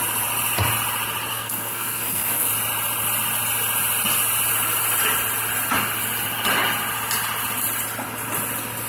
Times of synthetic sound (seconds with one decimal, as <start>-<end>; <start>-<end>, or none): 1.3-2.5